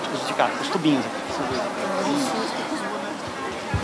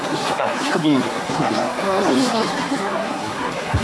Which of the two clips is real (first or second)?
first